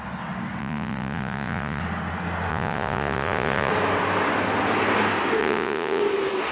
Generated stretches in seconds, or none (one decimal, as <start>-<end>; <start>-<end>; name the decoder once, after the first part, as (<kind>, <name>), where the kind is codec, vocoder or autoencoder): 0.6-1.8 (vocoder, Vocos); 2.5-3.7; 5.4-6.0